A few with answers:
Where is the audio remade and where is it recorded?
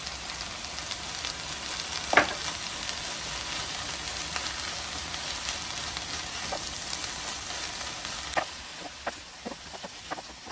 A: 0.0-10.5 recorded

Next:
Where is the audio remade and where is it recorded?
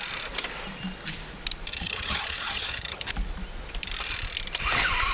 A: 0.0-1.7 recorded; 1.7-3.1 remade; 3.1-5.1 recorded